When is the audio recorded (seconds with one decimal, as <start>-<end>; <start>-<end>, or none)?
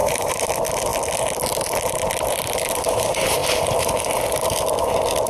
0.5-5.3